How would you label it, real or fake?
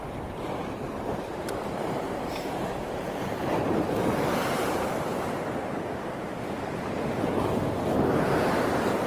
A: fake